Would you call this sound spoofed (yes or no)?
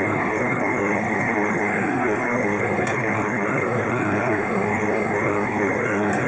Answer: yes